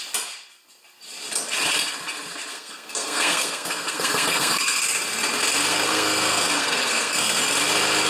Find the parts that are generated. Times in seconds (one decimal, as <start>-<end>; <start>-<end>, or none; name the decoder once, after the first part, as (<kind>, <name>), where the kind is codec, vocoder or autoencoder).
2.5-4.8 (codec, SNAC); 5.7-7.4